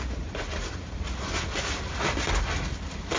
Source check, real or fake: real